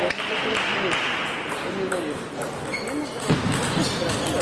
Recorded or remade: recorded